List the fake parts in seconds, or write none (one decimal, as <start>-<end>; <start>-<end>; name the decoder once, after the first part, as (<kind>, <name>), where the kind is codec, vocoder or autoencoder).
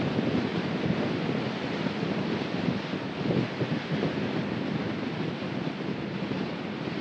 0.5-2.9 (vocoder, BigVGAN v2)